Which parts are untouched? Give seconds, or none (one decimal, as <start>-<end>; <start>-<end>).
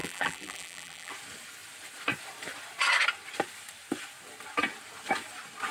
1.1-5.7